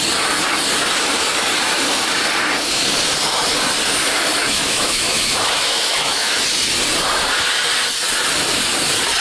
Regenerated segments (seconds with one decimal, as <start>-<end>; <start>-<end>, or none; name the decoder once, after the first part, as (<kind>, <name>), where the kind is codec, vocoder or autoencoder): 4.4-6.4 (autoencoder, DAC-VAE)